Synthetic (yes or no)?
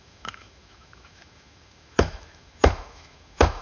yes